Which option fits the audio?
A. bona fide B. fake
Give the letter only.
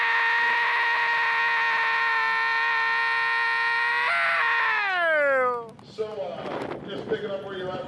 A